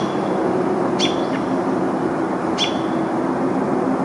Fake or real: real